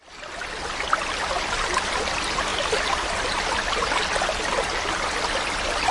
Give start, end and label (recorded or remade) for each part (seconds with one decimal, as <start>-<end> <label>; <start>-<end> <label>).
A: 0.0-5.9 recorded